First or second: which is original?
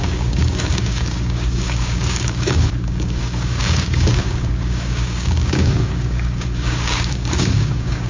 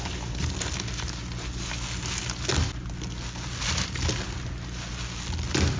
second